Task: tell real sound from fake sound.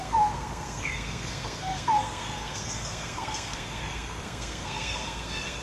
fake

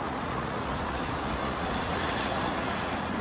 fake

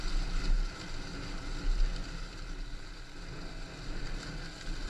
real